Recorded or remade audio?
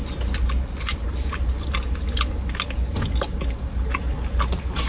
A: recorded